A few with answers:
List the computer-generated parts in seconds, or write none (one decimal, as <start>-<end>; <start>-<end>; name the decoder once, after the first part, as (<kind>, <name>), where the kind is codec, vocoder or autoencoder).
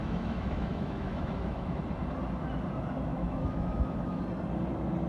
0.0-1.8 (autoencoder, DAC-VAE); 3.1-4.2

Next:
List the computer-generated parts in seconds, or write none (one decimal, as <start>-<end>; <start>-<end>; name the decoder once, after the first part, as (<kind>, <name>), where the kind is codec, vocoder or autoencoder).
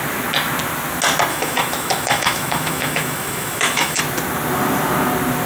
1.3-4.0 (autoencoder, DAC-VAE)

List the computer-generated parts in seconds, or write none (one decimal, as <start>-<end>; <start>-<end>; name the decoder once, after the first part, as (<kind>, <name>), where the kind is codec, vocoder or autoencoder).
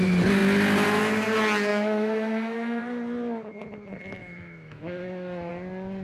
1.7-2.8 (autoencoder, DAC-VAE); 4.2-5.5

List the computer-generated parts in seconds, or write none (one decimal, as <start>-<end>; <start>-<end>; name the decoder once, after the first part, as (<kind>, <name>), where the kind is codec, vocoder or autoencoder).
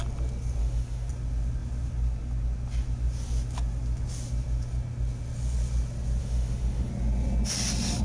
0.6-1.1 (autoencoder, DAC-VAE); 6.2-6.9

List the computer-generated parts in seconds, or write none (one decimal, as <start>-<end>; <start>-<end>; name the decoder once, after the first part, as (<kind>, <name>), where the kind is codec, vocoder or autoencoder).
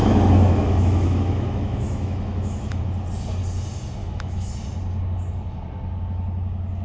0.0-2.8 (autoencoder, DAC-VAE); 4.0-4.5